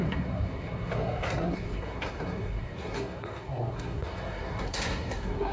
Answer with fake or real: fake